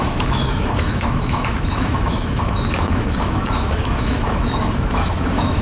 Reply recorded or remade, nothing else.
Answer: remade